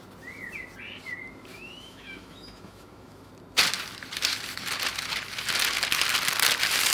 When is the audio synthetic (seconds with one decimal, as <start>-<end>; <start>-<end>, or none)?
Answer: 1.5-3.3